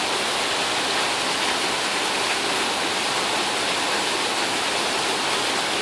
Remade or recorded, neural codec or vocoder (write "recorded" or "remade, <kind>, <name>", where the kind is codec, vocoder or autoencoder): recorded